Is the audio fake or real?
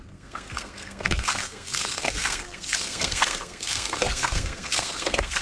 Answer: fake